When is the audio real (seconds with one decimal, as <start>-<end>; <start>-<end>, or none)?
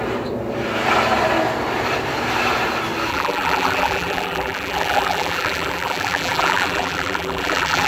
0.0-3.1